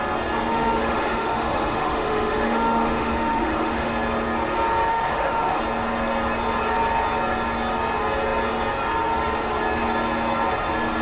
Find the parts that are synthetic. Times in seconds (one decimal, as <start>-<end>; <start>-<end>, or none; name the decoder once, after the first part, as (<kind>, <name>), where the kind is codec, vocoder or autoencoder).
0.5-3.9 (autoencoder, DAC-VAE); 4.9-5.6